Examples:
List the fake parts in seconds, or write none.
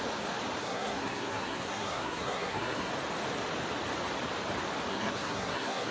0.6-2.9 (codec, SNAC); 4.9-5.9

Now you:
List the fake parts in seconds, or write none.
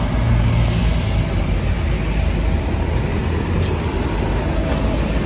none